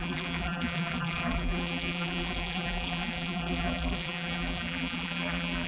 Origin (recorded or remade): remade